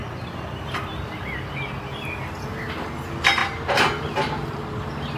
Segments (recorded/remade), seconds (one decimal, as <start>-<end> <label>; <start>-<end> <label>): 0.0-1.2 remade; 1.2-5.2 recorded